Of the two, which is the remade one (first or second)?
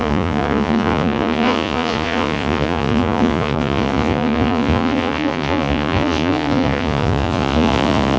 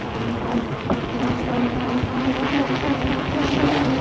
first